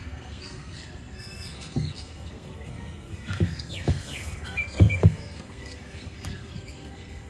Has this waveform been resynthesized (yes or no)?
yes